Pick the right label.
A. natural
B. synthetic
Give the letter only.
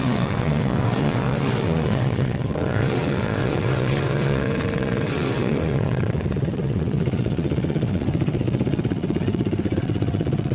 B